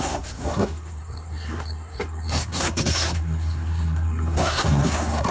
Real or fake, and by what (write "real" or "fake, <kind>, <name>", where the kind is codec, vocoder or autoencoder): fake, codec, SNAC